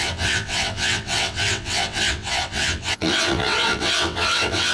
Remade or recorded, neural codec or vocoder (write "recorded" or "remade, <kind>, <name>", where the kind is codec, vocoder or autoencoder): remade, vocoder, WaveNeXt